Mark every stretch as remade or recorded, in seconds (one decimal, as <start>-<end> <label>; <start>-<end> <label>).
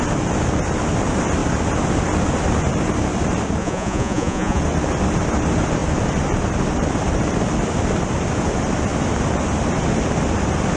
0.0-3.6 recorded; 3.6-4.6 remade; 4.6-10.8 recorded